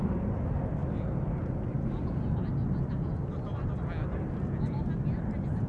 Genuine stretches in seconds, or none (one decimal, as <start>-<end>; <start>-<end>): 0.0-5.7